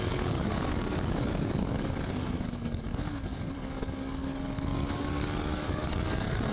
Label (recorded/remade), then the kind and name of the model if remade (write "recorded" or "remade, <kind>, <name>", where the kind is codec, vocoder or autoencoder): remade, codec, DAC